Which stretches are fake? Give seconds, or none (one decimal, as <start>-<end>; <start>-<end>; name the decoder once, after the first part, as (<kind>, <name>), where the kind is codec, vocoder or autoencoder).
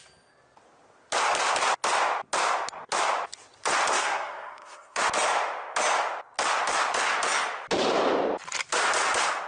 3.9-5.0 (codec, SNAC)